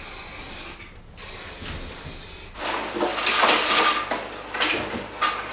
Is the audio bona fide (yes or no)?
yes